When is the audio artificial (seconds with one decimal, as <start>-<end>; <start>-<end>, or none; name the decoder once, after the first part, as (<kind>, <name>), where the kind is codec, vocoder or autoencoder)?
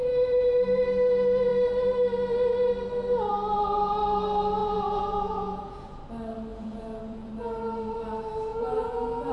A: 4.6-6.0 (vocoder, Vocos); 6.5-7.3; 8.5-9.3